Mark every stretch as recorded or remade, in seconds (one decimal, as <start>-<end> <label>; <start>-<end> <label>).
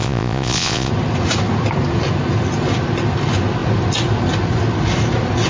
0.0-0.9 remade; 0.9-5.5 recorded